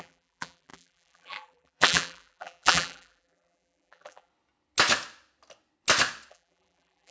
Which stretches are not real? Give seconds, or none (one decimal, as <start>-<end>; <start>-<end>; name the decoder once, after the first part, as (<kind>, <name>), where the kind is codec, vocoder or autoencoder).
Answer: 0.0-4.3 (vocoder, BigVGAN v2); 6.3-7.1